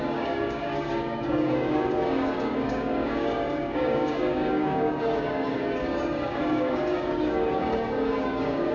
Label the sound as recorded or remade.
remade